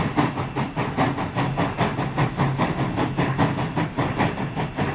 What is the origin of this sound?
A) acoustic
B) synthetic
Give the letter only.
A